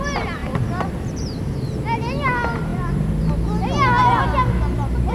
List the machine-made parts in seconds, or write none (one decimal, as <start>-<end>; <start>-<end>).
none